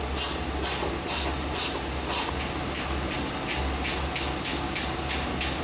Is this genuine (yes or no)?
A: yes